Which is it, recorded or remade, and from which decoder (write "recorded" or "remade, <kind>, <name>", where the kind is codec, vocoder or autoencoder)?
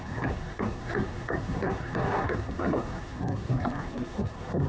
remade, codec, SNAC